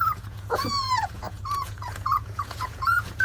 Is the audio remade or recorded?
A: remade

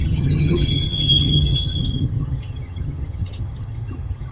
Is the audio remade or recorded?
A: remade